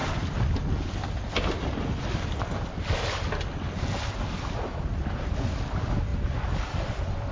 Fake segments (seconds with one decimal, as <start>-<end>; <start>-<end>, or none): none